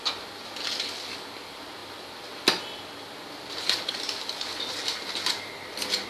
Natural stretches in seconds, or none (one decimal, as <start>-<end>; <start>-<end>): 0.0-1.8; 5.1-6.1

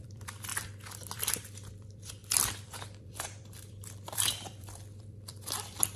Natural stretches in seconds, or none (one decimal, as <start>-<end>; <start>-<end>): 0.5-1.1

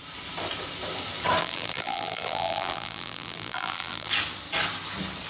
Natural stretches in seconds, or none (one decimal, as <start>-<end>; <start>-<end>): 0.0-1.4; 4.1-5.3

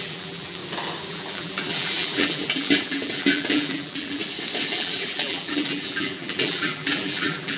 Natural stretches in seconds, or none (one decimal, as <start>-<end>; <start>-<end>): 0.6-1.1; 4.2-4.7

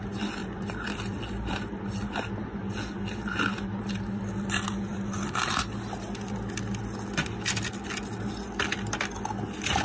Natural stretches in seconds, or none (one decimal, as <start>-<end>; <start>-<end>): 0.0-0.4; 1.6-4.9; 5.6-9.8

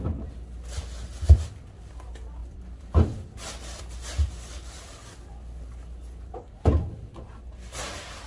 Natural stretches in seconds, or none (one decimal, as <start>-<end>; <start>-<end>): 0.0-2.4; 3.8-8.3

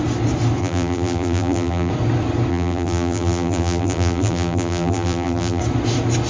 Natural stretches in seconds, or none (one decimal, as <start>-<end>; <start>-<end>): 0.0-0.6; 1.9-2.5; 5.6-6.3